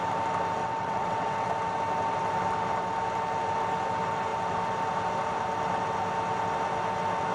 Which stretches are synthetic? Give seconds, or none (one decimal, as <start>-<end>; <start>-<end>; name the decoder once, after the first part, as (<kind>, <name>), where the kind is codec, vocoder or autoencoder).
0.6-1.5 (vocoder, WaveNeXt)